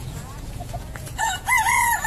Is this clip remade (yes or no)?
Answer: yes